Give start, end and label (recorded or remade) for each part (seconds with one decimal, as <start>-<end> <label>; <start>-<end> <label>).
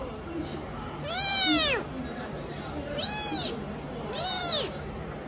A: 0.0-5.3 recorded